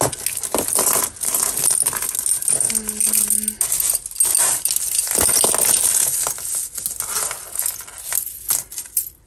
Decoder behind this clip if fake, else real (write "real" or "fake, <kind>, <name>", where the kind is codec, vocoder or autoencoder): real